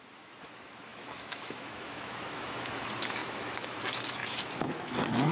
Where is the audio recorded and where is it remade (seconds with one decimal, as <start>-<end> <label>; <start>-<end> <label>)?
0.0-5.3 remade